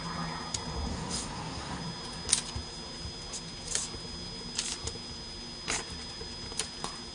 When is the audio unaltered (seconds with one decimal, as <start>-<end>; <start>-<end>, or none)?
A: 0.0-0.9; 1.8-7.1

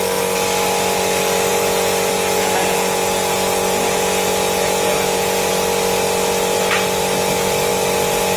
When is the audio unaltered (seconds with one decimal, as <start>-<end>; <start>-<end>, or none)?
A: 0.0-1.5; 5.5-8.4

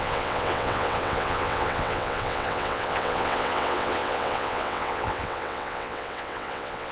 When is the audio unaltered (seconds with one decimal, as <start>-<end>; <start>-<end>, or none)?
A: none

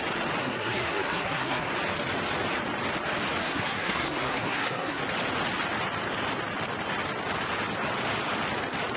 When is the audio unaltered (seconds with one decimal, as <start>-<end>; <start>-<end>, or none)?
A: 0.0-0.4; 1.7-3.4; 5.0-9.0

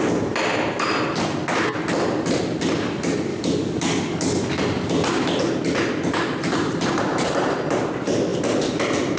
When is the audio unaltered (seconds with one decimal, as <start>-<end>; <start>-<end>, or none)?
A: 0.0-3.3; 4.6-9.2

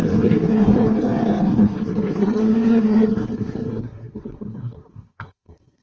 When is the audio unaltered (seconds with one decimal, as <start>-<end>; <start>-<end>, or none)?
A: none

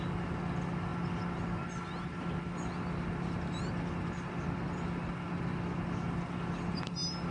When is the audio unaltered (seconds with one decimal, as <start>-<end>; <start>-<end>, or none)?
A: 0.0-7.3